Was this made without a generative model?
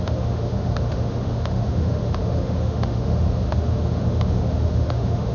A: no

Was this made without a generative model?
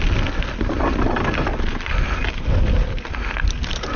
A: yes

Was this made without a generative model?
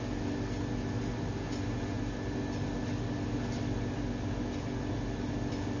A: yes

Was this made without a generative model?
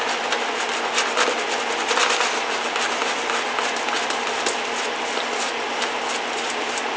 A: yes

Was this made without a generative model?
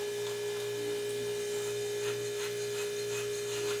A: yes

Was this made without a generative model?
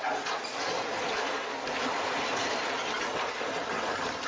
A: yes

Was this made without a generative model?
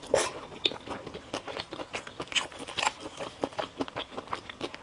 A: yes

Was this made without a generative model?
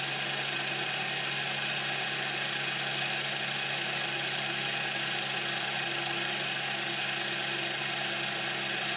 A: yes